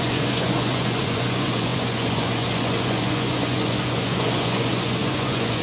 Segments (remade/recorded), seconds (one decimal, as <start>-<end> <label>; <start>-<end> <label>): 0.0-5.6 remade